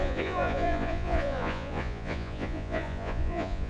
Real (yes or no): no